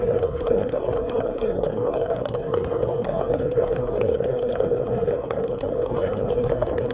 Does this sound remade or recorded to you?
remade